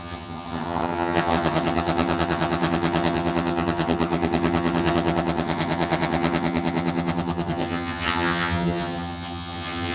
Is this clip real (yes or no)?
no